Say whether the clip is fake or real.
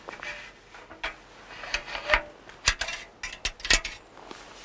real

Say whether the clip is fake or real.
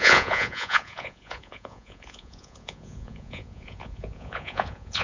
fake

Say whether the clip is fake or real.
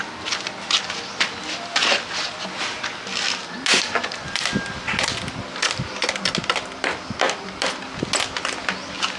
real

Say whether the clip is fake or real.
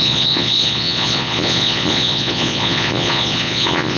fake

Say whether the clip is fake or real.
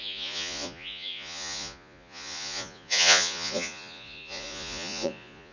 fake